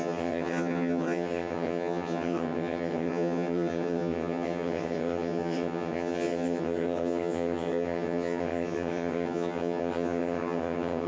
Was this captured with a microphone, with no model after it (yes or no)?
no